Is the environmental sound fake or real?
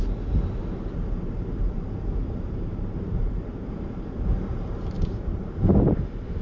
fake